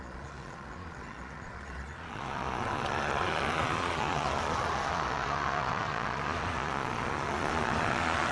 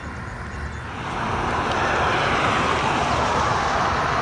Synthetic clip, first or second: first